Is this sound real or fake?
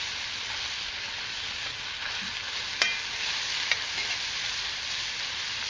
real